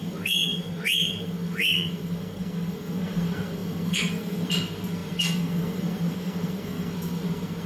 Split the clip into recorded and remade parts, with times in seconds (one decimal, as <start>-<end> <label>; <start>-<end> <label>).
0.0-7.7 remade